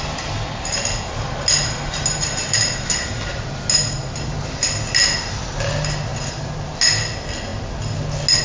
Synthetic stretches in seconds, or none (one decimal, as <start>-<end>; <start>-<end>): none